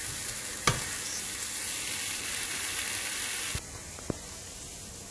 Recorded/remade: recorded